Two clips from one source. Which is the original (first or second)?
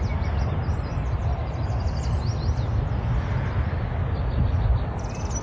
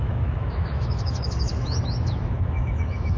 first